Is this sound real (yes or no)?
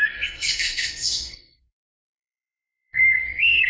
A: no